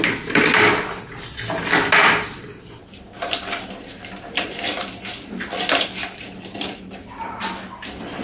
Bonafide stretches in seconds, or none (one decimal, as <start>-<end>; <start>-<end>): 0.0-8.2